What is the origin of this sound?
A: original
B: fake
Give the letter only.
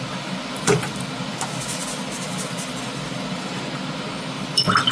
A